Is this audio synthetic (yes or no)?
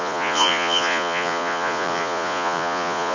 yes